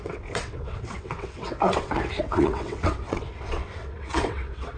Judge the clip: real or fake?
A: fake